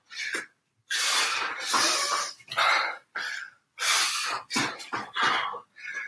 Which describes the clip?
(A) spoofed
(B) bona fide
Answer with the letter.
B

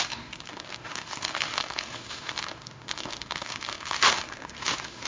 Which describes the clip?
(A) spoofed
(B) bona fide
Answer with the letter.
A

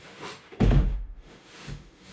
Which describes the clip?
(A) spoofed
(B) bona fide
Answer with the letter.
A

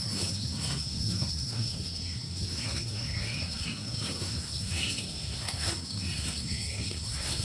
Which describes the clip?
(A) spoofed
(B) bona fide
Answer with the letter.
A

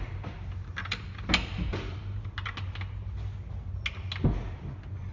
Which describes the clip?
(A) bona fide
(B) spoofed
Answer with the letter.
A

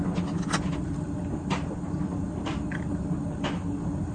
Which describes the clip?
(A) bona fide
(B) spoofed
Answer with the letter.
A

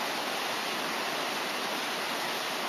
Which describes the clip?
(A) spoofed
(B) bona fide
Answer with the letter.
B